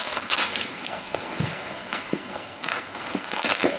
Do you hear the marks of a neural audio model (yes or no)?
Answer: yes